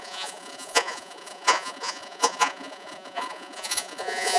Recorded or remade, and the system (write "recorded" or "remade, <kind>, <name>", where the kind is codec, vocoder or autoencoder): remade, vocoder, Vocos